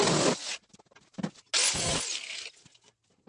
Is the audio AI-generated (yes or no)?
no